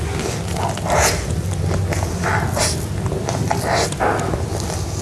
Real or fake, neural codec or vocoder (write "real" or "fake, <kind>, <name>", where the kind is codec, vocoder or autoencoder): real